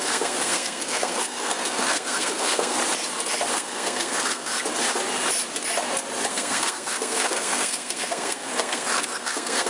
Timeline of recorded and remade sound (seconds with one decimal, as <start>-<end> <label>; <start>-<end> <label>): 0.0-2.8 remade; 2.8-3.5 recorded; 3.5-4.5 remade; 4.5-6.3 recorded; 6.3-9.7 remade